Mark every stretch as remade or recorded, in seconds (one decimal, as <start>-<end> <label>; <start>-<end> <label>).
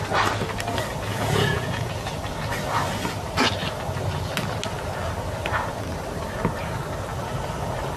0.0-1.1 recorded; 1.1-1.9 remade; 1.9-8.0 recorded